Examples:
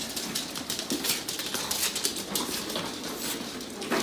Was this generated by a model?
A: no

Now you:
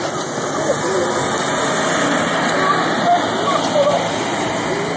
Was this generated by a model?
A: no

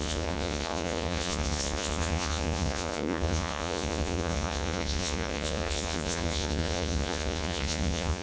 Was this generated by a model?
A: yes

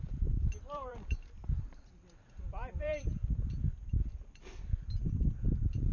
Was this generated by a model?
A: yes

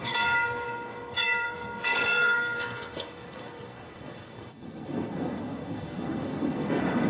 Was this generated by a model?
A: yes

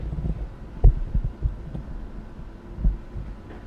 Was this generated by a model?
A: no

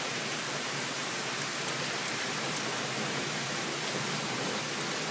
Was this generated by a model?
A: yes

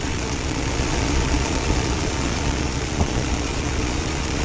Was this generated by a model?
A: yes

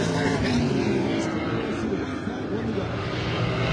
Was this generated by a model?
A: no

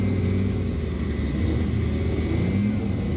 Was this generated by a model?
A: no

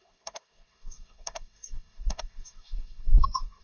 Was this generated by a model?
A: yes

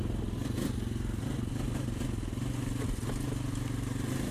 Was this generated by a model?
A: no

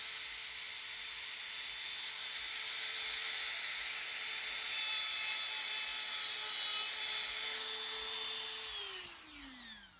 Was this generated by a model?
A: no